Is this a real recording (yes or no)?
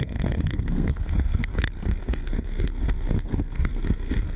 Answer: no